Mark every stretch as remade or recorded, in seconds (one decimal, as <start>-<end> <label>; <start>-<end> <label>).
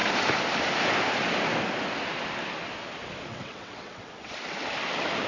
0.0-3.3 recorded; 3.3-4.3 remade; 4.3-5.3 recorded